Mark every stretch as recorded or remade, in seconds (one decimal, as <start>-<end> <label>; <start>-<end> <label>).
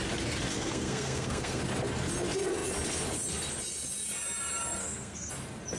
0.0-0.5 recorded; 0.5-1.6 remade; 1.6-4.8 recorded; 4.8-5.3 remade; 5.3-5.8 recorded